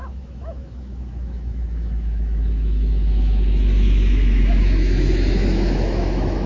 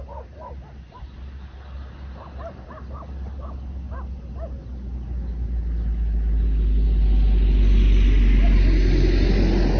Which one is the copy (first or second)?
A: first